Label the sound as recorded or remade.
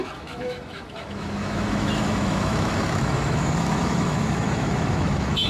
remade